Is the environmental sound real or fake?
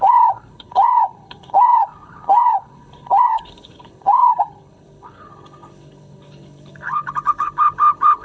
fake